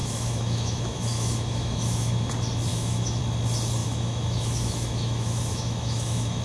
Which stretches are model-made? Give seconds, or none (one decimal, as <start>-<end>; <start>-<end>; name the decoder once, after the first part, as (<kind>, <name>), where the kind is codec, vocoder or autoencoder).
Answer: 0.0-2.3 (autoencoder, DAC-VAE); 2.7-3.2; 3.8-6.4

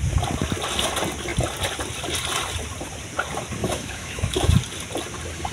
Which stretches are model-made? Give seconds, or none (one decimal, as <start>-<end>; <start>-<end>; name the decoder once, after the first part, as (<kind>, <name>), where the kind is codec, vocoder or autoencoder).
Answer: 3.6-4.5 (autoencoder, DAC-VAE)

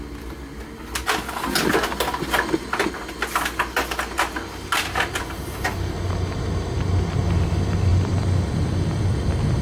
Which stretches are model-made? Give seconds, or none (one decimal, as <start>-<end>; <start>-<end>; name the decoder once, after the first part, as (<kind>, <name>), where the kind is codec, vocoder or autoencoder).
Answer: none

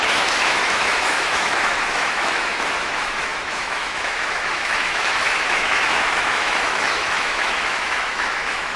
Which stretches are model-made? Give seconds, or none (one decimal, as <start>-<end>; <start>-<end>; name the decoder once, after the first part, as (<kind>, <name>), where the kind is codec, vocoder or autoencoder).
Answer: 0.0-8.8 (autoencoder, DAC-VAE)